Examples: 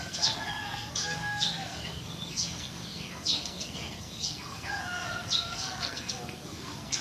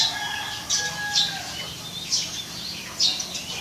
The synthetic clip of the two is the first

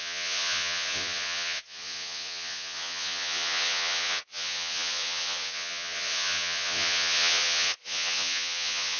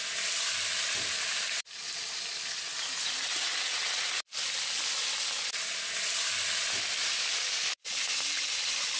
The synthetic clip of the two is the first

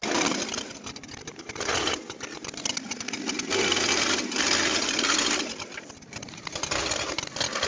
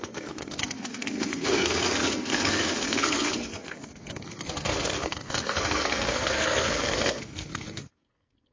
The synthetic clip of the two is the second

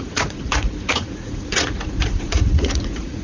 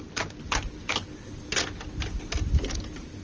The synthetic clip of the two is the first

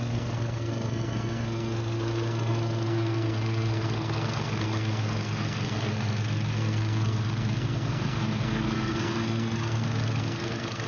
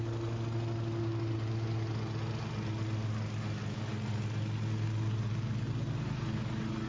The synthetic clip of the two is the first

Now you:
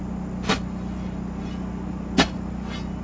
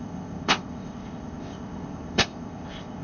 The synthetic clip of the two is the second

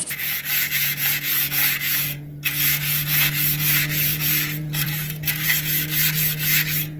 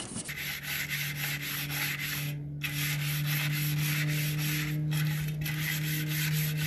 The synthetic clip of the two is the first